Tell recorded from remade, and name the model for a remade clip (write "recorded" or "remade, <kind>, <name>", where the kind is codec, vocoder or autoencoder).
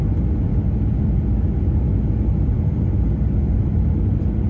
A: recorded